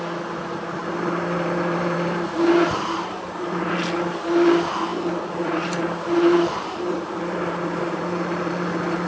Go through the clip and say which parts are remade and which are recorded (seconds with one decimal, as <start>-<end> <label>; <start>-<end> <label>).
0.0-0.8 recorded; 0.8-3.7 remade; 3.7-4.9 recorded; 4.9-8.5 remade; 8.5-9.1 recorded